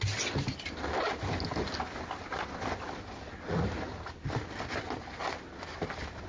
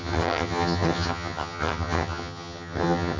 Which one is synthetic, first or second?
second